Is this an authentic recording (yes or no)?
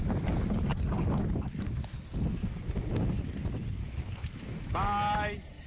yes